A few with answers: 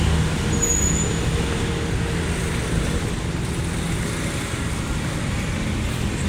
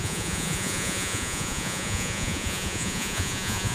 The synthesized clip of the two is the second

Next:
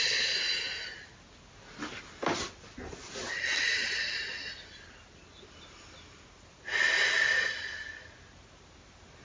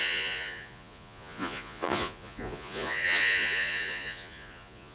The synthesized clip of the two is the second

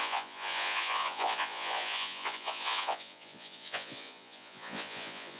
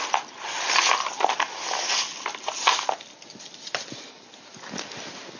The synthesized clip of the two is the first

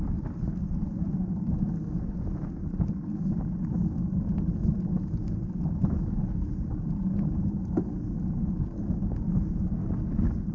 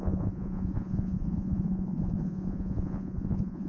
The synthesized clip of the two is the second